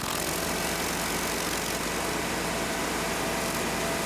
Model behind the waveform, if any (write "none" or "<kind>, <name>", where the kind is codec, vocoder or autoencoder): vocoder, BigVGAN v2